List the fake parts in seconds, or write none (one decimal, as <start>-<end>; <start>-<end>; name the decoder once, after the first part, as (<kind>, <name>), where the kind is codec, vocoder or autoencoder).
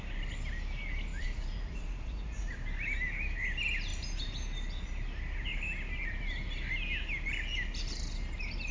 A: 1.1-2.5 (vocoder, Vocos)